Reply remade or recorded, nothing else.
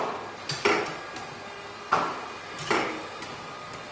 recorded